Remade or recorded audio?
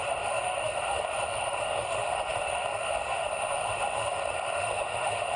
remade